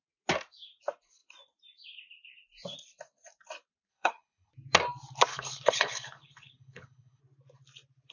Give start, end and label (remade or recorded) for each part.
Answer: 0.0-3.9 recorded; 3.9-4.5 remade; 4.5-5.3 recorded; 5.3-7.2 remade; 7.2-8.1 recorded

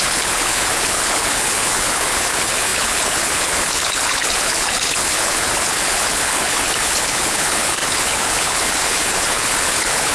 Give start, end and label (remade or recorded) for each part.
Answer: 0.0-10.1 remade

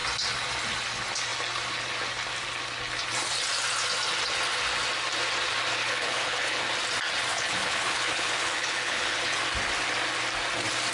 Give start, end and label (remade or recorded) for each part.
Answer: 0.0-5.8 recorded; 5.8-6.6 remade; 6.6-7.3 recorded; 7.3-9.4 remade; 9.4-10.9 recorded

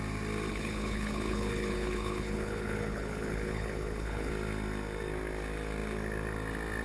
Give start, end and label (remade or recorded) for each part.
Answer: 0.0-0.5 recorded; 0.5-4.3 remade; 4.3-6.8 recorded